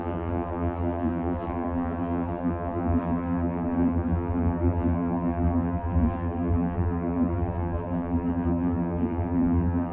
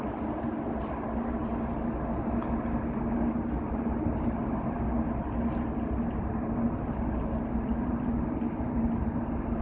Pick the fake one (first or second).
first